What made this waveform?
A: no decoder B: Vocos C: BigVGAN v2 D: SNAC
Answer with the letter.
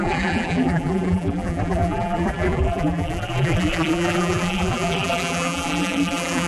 C